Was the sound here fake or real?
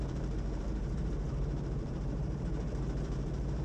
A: fake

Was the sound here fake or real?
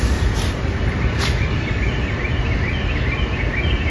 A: fake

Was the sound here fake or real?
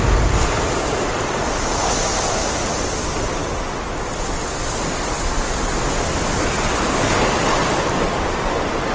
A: real